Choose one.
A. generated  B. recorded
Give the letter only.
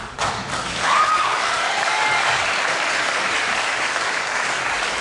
A